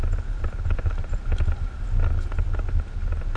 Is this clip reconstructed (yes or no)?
no